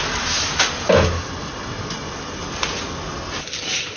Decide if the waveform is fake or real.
real